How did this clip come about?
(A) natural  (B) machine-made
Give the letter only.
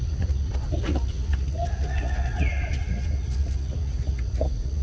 B